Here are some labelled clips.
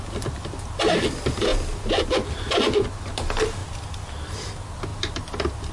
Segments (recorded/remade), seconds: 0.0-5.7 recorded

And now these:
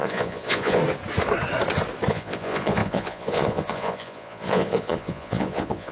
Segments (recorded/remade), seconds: 0.0-0.8 remade; 0.8-2.1 recorded; 2.1-5.9 remade